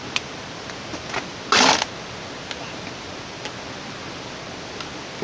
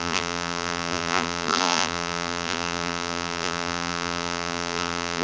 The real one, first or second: first